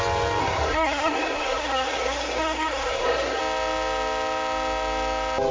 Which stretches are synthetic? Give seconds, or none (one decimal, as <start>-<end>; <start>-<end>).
0.4-3.4